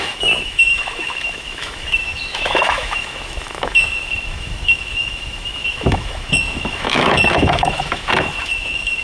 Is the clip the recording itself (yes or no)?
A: no